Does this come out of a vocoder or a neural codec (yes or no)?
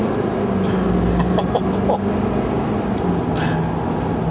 no